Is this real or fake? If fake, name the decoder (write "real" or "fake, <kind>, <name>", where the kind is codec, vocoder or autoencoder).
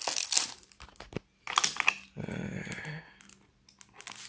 real